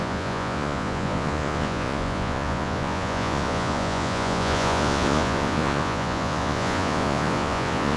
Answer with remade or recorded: remade